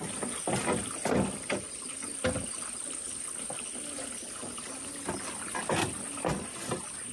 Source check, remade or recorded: recorded